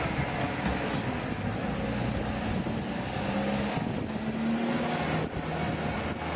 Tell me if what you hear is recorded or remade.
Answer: recorded